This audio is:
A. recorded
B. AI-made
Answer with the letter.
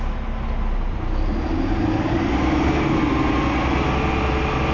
A